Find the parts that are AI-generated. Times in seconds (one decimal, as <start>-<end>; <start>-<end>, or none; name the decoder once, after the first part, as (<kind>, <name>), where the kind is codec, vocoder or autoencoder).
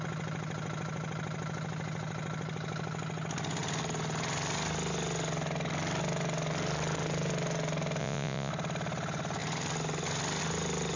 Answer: 8.0-8.5 (vocoder, Vocos)